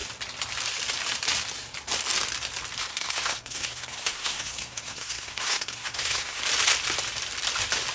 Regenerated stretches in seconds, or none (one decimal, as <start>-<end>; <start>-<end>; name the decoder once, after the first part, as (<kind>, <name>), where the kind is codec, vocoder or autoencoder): 2.9-6.4 (codec, SNAC)

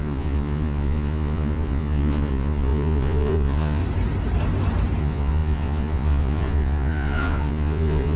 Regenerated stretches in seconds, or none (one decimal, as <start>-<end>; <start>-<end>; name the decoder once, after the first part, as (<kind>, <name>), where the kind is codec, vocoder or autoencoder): 0.0-3.8 (vocoder, Vocos); 5.0-8.2

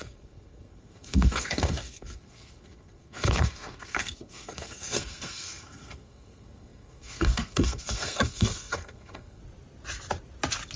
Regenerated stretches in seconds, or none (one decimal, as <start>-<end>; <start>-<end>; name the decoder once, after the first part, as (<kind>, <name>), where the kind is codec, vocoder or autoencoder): 0.0-9.4 (codec, SNAC)

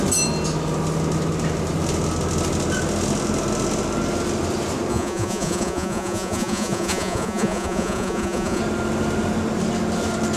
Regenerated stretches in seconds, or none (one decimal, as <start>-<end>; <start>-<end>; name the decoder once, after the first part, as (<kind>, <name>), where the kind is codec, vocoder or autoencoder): 4.9-8.6 (vocoder, Vocos)